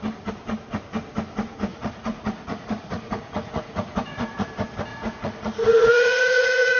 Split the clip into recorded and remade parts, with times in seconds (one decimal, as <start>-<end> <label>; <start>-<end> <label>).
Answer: 0.0-1.7 recorded; 1.7-4.5 remade; 4.5-4.9 recorded; 4.9-6.8 remade

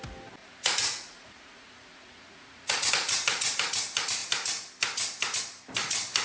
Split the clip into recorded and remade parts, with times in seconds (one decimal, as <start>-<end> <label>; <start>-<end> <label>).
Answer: 0.0-0.4 recorded; 0.4-2.9 remade; 2.9-6.2 recorded

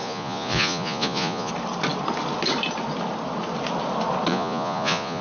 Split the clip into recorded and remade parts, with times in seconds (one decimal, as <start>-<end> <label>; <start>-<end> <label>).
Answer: 0.0-1.5 remade; 1.5-4.3 recorded; 4.3-5.2 remade

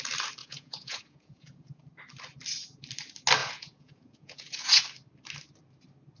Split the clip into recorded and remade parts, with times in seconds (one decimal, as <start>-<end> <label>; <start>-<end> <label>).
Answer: 0.0-0.4 recorded; 0.4-1.8 remade; 1.8-3.4 recorded; 3.4-4.8 remade; 4.8-6.2 recorded

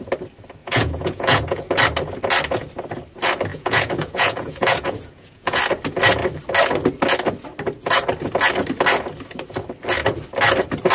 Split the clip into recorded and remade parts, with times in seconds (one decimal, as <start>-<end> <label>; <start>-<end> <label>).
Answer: 0.0-0.6 recorded; 0.6-1.6 remade; 1.6-3.5 recorded; 3.5-5.6 remade; 5.6-10.9 recorded

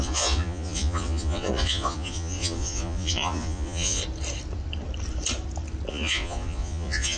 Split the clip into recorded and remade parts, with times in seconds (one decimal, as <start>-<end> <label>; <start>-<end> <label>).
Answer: 0.0-4.0 remade; 4.0-5.9 recorded; 5.9-7.2 remade